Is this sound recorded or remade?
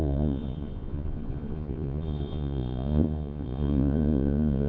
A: remade